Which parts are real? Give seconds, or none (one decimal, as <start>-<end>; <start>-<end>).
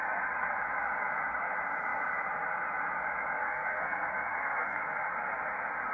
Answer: 0.0-3.4; 4.8-5.9